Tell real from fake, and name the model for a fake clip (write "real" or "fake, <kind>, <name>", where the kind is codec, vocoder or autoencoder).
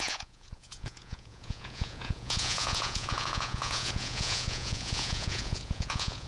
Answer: fake, vocoder, Vocos